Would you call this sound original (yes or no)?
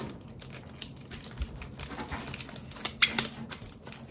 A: yes